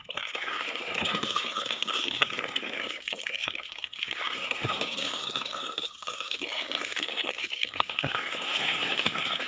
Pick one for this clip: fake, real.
fake